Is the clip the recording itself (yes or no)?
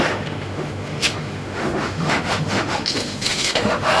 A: no